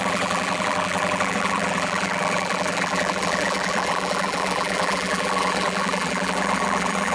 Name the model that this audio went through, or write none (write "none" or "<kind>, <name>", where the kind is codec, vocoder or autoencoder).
vocoder, BigVGAN v2